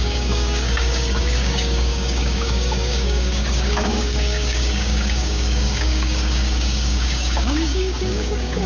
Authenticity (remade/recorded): remade